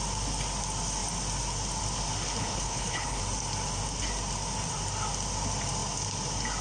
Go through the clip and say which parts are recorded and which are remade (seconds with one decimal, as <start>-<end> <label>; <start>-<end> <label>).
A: 0.0-2.4 recorded; 2.4-3.2 remade; 3.2-6.6 recorded